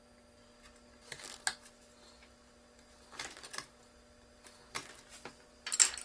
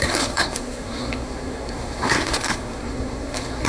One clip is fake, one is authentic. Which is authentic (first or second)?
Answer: first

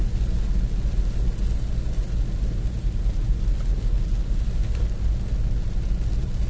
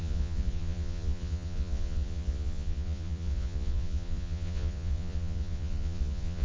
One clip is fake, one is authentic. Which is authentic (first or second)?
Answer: first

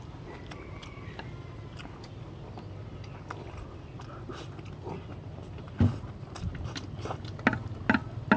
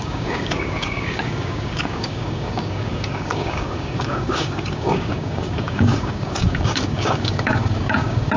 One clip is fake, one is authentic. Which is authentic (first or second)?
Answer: first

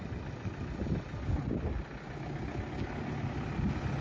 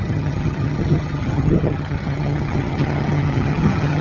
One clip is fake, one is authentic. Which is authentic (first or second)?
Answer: first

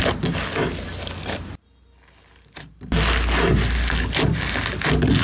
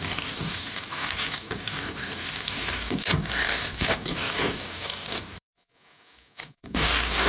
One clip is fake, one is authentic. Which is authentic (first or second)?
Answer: first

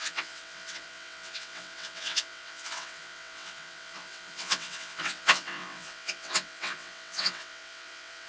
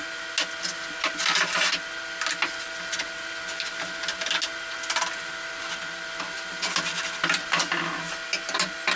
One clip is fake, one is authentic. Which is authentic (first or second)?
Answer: second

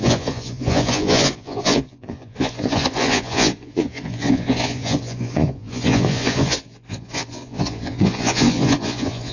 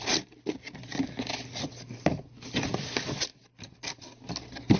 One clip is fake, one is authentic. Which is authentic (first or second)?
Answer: second